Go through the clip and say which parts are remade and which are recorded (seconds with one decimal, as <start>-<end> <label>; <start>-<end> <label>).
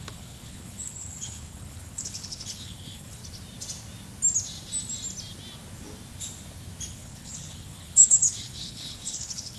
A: 0.0-3.2 remade; 3.2-6.9 recorded; 6.9-9.6 remade